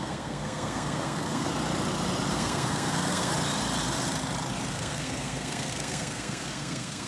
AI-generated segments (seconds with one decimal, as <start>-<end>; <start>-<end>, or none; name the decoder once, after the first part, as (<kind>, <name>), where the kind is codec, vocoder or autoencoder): 0.0-1.5 (codec, SNAC); 2.3-3.3; 4.7-7.1